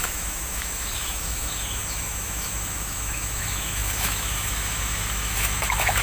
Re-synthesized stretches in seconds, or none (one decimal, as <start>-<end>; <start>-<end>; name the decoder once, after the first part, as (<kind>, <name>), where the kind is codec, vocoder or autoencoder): 0.0-6.0 (autoencoder, DAC-VAE)